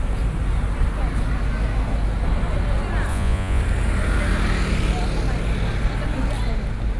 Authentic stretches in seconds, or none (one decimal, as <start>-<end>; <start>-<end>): 0.0-3.1; 3.6-7.0